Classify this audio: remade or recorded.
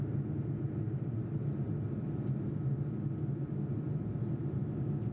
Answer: recorded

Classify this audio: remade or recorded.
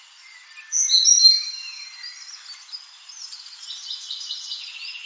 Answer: recorded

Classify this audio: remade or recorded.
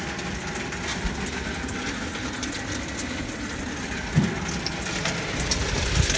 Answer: recorded